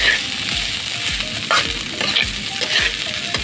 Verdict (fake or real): real